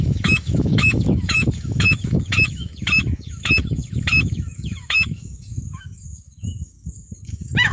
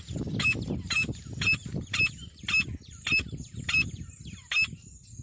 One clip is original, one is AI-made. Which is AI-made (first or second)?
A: first